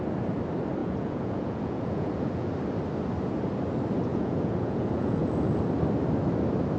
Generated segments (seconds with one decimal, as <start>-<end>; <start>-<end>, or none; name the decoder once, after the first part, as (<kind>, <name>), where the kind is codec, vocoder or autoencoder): 0.8-2.5 (vocoder, Vocos); 4.1-5.6